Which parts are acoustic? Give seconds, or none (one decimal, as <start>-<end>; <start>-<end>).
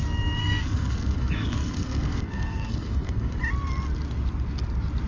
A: 0.0-0.4; 3.3-5.1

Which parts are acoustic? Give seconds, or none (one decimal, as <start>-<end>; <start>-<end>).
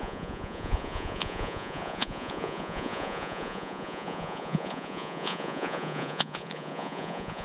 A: none